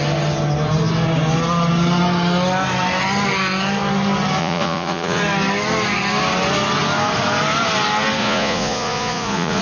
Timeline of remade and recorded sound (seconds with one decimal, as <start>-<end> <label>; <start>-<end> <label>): 0.0-4.4 recorded; 4.4-5.2 remade; 5.2-8.2 recorded; 8.2-9.6 remade